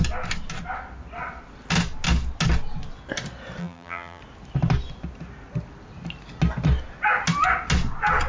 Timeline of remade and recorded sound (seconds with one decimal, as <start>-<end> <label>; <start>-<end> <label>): 0.0-3.6 recorded; 3.6-4.2 remade; 4.2-8.3 recorded